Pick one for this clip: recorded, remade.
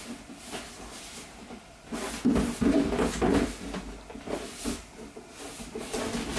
recorded